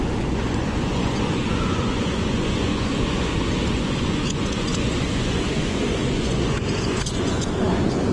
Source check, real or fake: fake